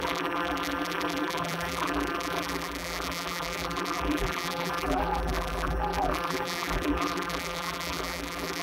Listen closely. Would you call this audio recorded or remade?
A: remade